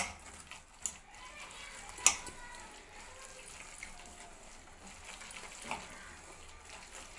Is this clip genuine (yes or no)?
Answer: yes